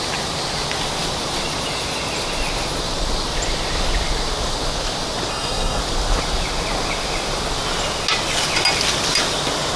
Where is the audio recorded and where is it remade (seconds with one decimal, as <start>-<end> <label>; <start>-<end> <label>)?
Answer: 0.0-5.3 recorded; 5.3-5.8 remade; 5.8-9.8 recorded